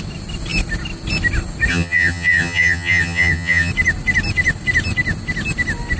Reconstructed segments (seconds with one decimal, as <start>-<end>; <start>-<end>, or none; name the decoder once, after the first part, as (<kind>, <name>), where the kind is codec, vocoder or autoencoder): 1.7-3.7 (vocoder, HiFi-GAN)